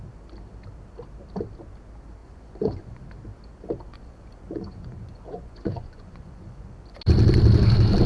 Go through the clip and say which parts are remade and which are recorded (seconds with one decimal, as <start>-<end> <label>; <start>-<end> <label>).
0.0-2.2 recorded; 2.2-3.0 remade; 3.0-3.9 recorded; 3.9-7.0 remade; 7.0-8.1 recorded